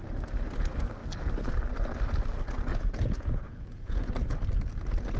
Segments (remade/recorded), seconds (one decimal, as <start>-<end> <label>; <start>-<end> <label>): 0.0-2.7 recorded; 2.7-4.1 remade; 4.1-5.2 recorded